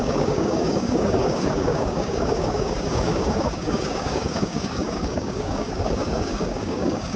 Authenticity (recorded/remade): remade